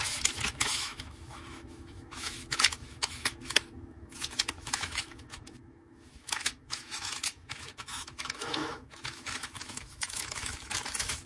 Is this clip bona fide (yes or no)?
no